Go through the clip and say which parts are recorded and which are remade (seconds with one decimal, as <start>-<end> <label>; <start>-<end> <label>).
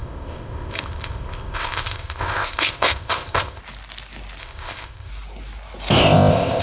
0.0-3.6 remade; 3.6-4.4 recorded; 4.4-5.1 remade; 5.1-6.0 recorded; 6.0-6.6 remade